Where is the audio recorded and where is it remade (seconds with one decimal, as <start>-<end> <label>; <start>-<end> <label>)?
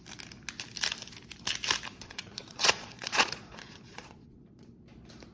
0.0-1.9 recorded; 1.9-4.8 remade; 4.8-5.3 recorded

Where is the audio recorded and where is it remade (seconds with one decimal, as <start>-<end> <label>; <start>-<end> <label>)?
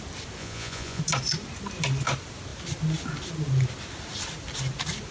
0.0-0.4 recorded; 0.4-1.0 remade; 1.0-5.1 recorded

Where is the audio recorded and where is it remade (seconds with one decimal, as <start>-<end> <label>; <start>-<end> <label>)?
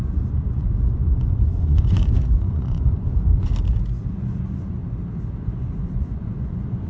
0.0-3.5 remade; 3.5-4.1 recorded; 4.1-4.8 remade; 4.8-5.4 recorded; 5.4-6.9 remade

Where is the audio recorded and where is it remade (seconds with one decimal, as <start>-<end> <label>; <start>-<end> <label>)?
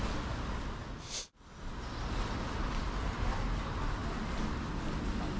0.0-5.4 recorded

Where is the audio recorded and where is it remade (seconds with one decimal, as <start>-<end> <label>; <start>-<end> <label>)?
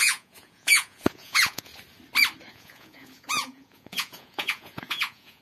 0.0-1.7 remade; 1.7-2.5 recorded; 2.5-5.4 remade